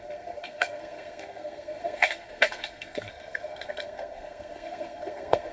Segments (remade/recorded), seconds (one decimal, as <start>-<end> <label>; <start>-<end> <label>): 0.0-5.5 remade